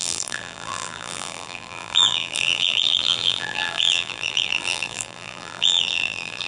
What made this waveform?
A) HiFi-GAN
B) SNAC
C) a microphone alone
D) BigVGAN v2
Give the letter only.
D